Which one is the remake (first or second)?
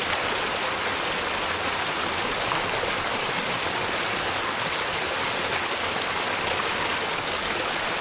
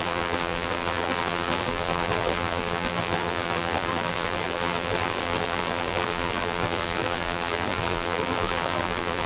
second